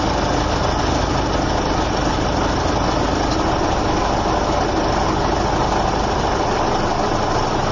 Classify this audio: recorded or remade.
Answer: recorded